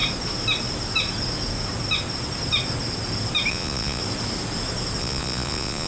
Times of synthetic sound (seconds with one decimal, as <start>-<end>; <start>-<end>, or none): 3.5-4.0; 5.0-5.9